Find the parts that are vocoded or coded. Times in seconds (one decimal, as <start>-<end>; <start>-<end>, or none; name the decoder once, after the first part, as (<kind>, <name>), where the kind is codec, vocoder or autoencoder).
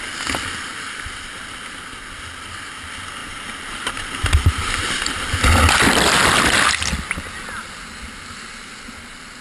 3.2-4.5 (vocoder, BigVGAN v2)